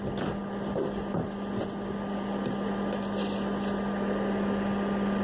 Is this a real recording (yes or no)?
yes